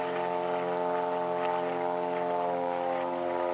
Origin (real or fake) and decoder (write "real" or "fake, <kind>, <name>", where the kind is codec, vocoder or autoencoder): real